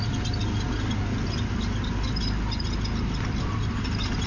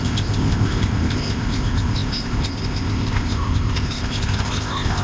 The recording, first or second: first